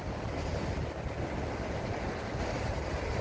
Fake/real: real